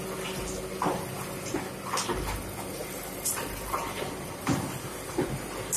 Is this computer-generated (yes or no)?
no